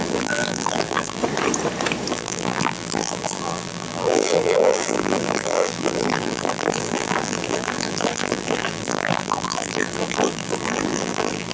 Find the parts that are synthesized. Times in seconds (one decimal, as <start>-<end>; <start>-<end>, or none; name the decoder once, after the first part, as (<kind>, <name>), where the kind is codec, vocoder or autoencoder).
0.0-1.2 (vocoder, BigVGAN v2); 2.1-11.5

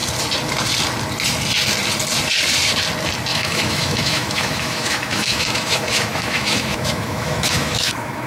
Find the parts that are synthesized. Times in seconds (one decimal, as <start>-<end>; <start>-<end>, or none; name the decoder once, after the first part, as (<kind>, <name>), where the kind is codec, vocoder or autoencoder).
3.3-8.3 (autoencoder, DAC-VAE)

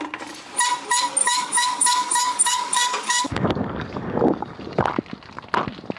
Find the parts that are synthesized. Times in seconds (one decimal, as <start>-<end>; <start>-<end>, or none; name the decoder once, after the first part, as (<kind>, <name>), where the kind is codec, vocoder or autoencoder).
1.2-4.8 (codec, DAC)